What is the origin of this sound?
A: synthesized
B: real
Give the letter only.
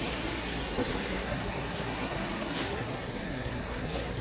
A